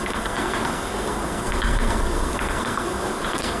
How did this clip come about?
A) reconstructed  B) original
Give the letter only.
A